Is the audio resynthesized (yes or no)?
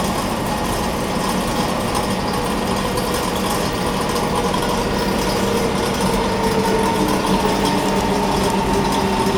no